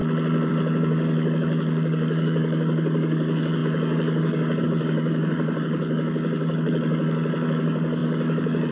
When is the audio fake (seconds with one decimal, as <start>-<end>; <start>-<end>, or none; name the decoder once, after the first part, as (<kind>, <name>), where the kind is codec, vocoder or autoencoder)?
0.5-8.7 (codec, DAC)